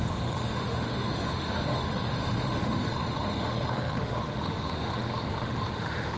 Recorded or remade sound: remade